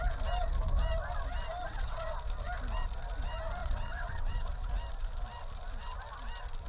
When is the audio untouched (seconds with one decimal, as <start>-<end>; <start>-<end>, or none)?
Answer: 0.0-1.7; 2.2-3.6; 4.7-6.7